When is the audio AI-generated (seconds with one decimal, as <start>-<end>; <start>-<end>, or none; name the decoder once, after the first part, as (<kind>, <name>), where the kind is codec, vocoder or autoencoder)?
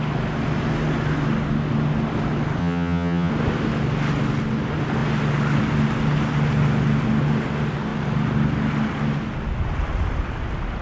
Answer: 2.6-3.3 (vocoder, HiFi-GAN)